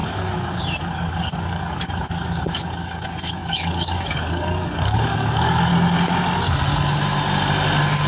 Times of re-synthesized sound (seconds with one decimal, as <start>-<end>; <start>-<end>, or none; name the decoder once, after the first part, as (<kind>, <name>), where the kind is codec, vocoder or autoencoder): 0.0-5.7 (codec, DAC)